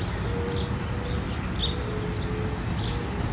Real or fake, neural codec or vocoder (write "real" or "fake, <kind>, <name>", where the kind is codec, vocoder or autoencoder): real